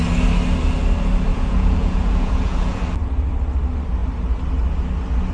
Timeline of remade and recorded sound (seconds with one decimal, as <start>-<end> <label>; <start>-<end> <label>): 0.0-1.3 recorded; 1.3-2.8 remade; 2.8-5.3 recorded